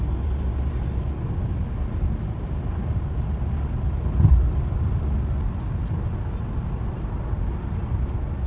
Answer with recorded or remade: recorded